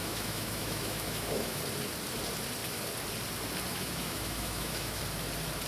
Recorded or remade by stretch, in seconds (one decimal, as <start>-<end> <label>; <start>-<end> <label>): 0.0-1.6 remade; 1.6-3.7 recorded; 3.7-5.0 remade; 5.0-5.7 recorded